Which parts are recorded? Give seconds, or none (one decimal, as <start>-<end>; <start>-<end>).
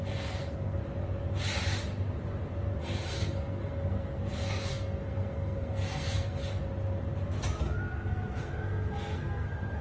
0.8-2.8; 6.4-7.6